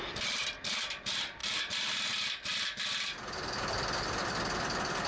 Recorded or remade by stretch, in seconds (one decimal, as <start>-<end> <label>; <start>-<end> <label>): 0.0-5.1 recorded